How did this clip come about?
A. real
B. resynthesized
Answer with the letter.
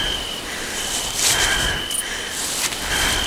A